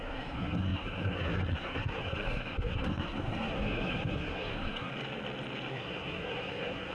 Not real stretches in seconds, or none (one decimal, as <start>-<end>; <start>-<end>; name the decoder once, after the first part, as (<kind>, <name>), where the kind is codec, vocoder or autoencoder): 0.0-4.9 (codec, SNAC); 5.7-6.9